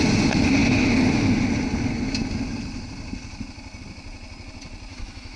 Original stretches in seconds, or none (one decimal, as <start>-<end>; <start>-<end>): 0.0-4.9